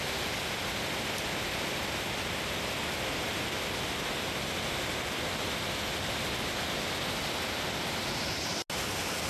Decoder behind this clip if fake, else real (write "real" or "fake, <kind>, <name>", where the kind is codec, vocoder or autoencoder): real